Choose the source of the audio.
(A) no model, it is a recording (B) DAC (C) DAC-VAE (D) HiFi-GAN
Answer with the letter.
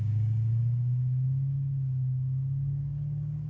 B